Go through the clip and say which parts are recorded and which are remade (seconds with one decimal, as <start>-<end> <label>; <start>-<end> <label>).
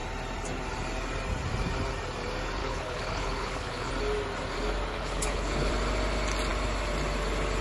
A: 0.0-2.6 recorded; 2.6-3.9 remade; 3.9-4.9 recorded; 4.9-5.7 remade; 5.7-7.6 recorded